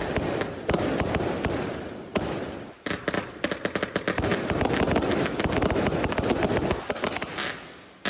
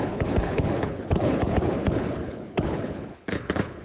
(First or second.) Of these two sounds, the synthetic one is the second